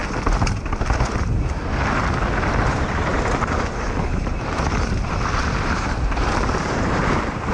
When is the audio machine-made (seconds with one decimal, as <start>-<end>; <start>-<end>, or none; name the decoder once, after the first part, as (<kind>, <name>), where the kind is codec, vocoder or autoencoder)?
2.6-3.1 (vocoder, BigVGAN v2); 5.4-7.5